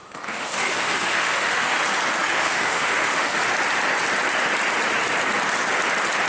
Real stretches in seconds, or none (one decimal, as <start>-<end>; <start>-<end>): 1.8-2.2; 3.4-6.3